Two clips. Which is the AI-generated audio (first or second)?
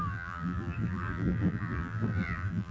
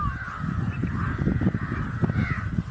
first